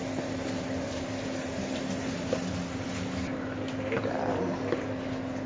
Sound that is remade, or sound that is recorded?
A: recorded